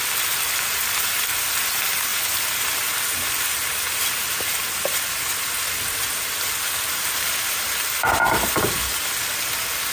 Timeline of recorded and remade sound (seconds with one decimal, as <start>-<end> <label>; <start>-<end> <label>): 0.0-9.9 recorded